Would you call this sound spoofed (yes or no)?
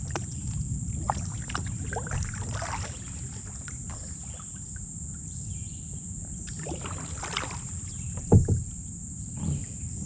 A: no